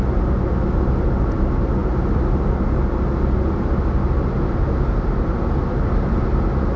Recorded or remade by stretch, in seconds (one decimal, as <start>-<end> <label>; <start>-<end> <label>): 0.0-6.8 recorded